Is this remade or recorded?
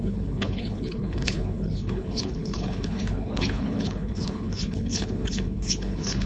remade